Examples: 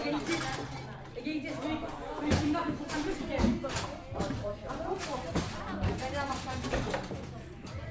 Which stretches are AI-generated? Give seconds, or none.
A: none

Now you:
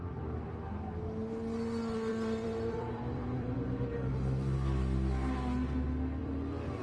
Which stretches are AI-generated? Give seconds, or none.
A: 2.1-4.1 (vocoder, BigVGAN v2); 6.2-6.8

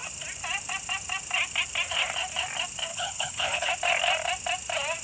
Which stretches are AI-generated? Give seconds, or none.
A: 2.9-3.7 (codec, HILCodec)